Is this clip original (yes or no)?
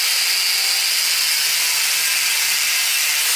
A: yes